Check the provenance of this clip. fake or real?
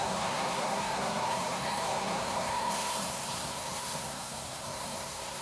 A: fake